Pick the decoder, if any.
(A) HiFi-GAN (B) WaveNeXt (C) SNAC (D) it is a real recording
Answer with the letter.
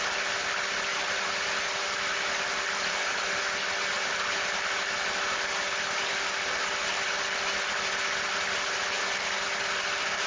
D